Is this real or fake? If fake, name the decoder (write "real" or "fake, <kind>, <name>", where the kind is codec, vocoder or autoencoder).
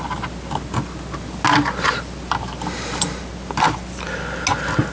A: real